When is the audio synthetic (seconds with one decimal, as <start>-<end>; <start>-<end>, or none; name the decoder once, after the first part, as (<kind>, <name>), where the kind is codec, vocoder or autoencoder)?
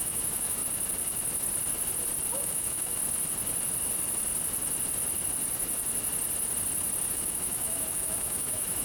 0.0-0.6 (autoencoder, DAC-VAE); 2.3-3.0; 7.1-8.8